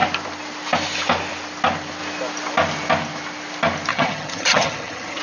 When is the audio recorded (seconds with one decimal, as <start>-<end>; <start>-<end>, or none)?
0.0-3.9